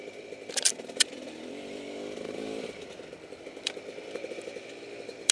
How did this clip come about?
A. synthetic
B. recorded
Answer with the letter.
A